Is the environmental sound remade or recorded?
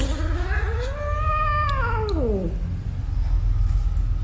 recorded